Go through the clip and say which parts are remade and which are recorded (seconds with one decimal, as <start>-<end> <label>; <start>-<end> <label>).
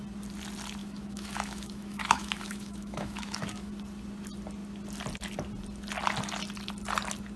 0.0-0.8 recorded; 0.8-3.7 remade; 3.7-7.4 recorded